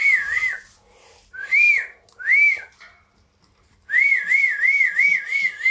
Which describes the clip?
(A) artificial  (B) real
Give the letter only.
B